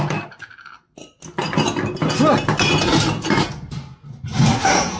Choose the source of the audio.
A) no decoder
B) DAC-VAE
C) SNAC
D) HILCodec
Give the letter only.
A